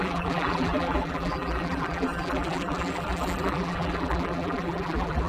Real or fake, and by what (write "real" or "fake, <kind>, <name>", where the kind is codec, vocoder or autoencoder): fake, vocoder, BigVGAN v2